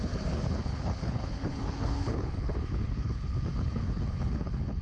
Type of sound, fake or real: fake